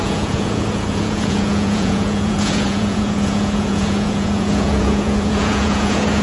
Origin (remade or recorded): remade